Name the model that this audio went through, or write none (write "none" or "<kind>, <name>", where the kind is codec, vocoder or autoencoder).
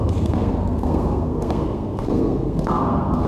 codec, SNAC